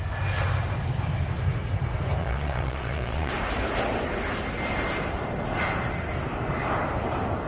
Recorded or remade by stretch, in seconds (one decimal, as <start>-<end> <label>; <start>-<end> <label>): 0.0-2.2 recorded; 2.2-3.3 remade; 3.3-7.5 recorded